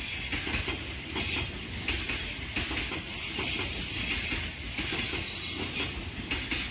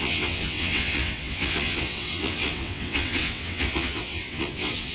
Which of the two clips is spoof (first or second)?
second